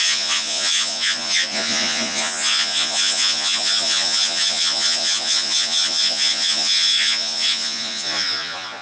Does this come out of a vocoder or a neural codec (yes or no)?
yes